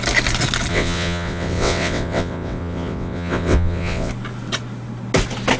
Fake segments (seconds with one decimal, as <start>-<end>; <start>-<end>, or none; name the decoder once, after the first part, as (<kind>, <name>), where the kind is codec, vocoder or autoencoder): 0.7-4.1 (vocoder, WaveNeXt)